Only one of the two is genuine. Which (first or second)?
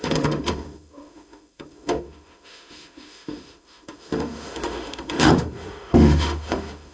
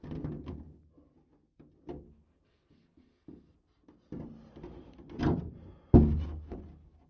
second